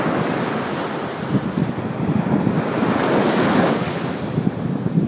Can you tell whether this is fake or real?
real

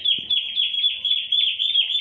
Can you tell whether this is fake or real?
fake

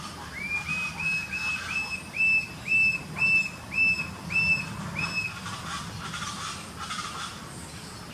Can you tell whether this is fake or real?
real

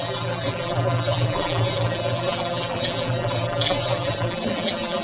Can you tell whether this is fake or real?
fake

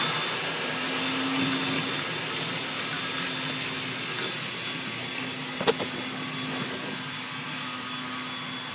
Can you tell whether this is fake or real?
real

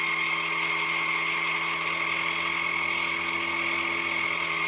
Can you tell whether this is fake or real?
real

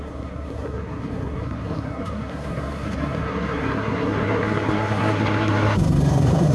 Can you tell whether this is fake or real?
fake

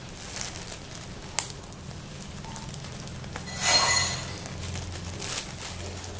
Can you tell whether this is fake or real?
real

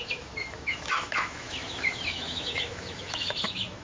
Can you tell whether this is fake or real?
fake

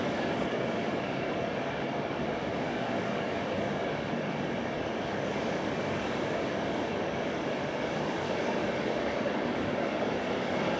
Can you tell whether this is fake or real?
fake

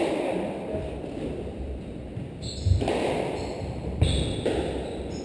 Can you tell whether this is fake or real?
real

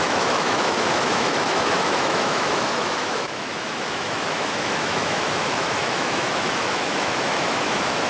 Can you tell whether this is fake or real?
fake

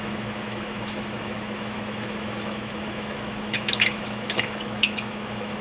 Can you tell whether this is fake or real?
fake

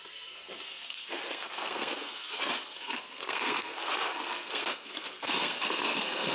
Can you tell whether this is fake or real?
fake